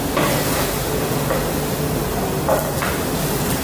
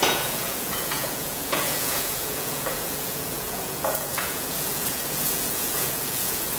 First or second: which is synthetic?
second